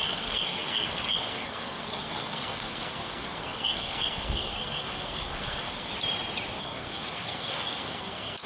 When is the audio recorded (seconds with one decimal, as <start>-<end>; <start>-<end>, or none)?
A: 5.9-6.6